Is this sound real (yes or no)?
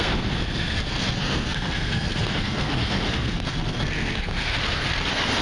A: no